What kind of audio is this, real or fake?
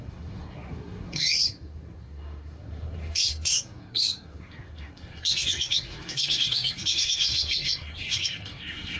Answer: fake